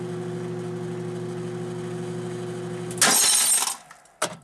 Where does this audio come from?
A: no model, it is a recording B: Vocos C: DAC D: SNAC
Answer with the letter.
A